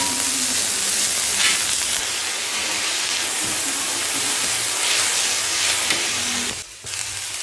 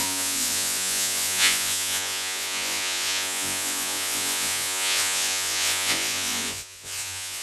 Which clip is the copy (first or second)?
second